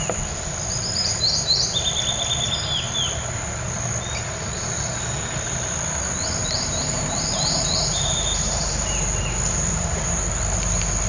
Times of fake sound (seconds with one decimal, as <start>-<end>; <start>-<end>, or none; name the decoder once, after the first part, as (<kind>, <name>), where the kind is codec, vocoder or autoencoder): 6.4-9.1 (vocoder, BigVGAN v2)